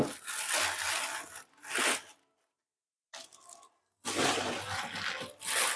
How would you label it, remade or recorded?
recorded